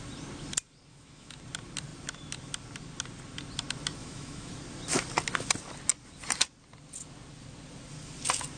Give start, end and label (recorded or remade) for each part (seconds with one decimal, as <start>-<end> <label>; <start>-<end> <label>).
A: 0.0-0.9 recorded; 0.9-1.4 remade; 1.4-4.0 recorded; 4.0-4.5 remade; 4.5-8.6 recorded